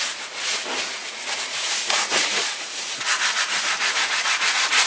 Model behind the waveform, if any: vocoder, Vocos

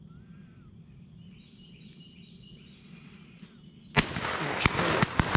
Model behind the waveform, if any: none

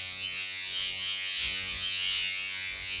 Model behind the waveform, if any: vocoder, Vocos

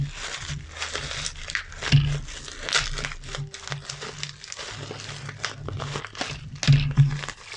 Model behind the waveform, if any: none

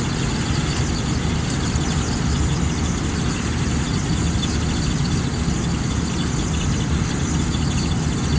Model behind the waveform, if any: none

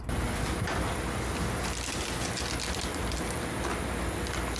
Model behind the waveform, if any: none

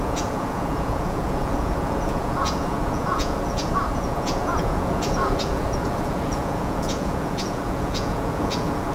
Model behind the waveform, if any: vocoder, Vocos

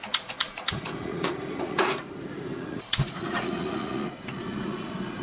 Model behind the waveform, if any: vocoder, Vocos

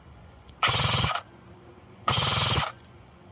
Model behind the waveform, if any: vocoder, Vocos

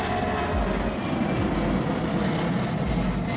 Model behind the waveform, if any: none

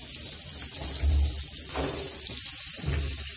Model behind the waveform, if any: none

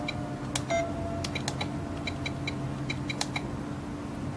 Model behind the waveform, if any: none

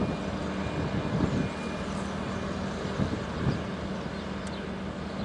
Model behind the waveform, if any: none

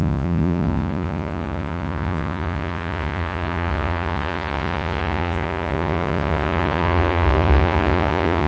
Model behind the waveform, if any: vocoder, Vocos